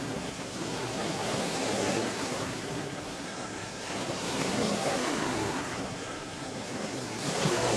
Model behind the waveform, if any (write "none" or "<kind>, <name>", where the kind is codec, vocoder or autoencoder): codec, SNAC